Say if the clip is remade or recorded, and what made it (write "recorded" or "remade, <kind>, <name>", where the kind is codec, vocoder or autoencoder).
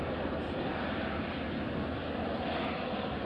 recorded